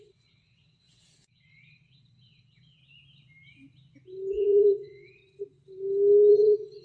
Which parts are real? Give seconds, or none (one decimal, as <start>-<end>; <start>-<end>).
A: 2.8-4.3; 5.2-6.3